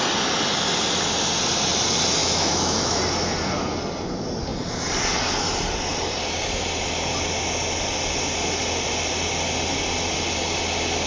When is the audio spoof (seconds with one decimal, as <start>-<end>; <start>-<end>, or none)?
2.2-3.0